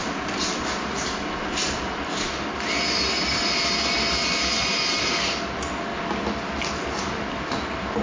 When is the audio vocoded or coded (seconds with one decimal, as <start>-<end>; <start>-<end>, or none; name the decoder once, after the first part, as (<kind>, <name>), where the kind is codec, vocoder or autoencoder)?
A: none